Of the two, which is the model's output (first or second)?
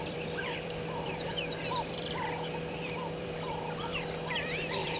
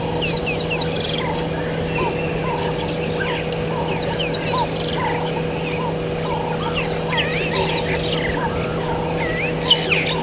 first